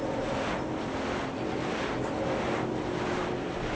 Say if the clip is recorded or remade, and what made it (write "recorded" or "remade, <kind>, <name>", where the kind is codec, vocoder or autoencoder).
recorded